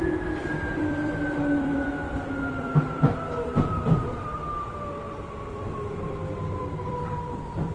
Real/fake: fake